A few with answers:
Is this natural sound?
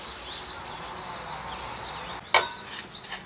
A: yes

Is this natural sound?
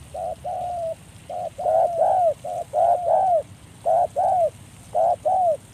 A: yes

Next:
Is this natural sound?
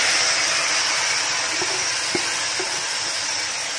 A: yes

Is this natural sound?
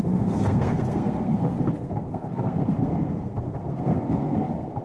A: no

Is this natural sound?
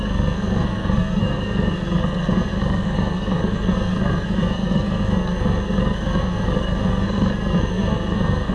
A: no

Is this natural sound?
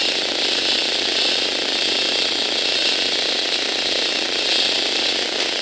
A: yes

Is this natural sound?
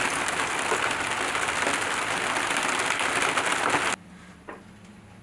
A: yes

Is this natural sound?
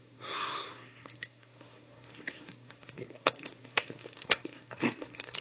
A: no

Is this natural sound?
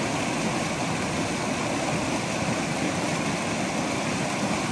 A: yes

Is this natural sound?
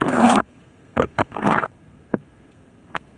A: no